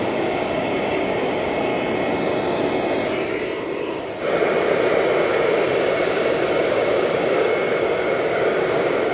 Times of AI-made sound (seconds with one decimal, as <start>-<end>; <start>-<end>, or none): 0.0-1.7; 5.8-9.1